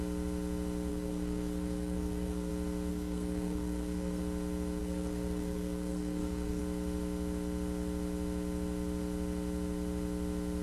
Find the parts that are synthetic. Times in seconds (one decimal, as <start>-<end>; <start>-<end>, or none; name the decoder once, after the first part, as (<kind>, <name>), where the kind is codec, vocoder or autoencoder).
0.9-2.5 (codec, SNAC); 2.9-4.2; 4.8-6.6